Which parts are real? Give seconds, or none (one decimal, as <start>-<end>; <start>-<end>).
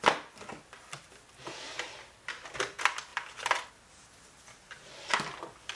0.0-5.7